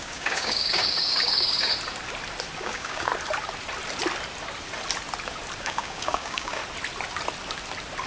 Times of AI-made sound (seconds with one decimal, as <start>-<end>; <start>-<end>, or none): 0.0-1.7; 2.6-3.1; 5.6-6.6